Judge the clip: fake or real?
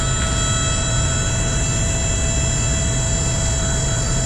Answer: real